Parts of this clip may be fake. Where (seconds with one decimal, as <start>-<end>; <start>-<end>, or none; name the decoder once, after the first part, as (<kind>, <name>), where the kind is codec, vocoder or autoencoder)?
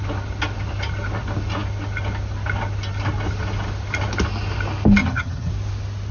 5.0-5.5 (vocoder, HiFi-GAN)